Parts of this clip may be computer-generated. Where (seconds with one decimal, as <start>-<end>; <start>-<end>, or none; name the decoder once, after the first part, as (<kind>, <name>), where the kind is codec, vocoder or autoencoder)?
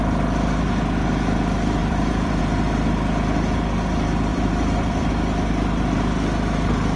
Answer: 1.8-2.4 (vocoder, BigVGAN v2); 4.3-5.1